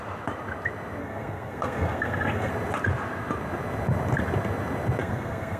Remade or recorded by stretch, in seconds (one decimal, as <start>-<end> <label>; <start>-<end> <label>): 0.0-1.0 recorded; 1.0-2.5 remade; 2.5-5.0 recorded; 5.0-5.6 remade